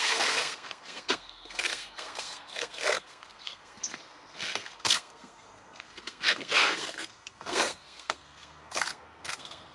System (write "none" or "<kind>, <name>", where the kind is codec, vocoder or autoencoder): codec, SNAC